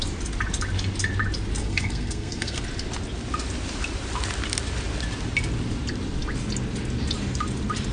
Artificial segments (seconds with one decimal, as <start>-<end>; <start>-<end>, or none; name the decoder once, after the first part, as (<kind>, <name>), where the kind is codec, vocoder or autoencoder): 1.6-2.6 (codec, SNAC)